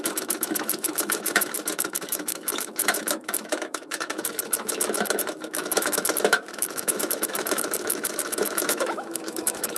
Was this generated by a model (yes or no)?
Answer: yes